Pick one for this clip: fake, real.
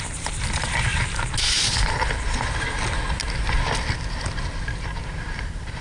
real